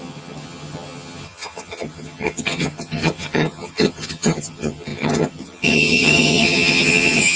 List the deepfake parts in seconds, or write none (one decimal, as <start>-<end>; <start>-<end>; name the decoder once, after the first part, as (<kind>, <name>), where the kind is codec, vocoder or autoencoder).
0.0-7.4 (vocoder, HiFi-GAN)